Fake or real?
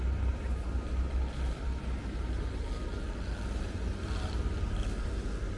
real